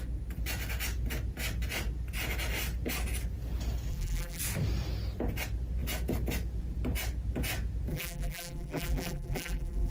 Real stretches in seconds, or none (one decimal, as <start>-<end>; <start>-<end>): 0.0-3.9; 4.4-7.9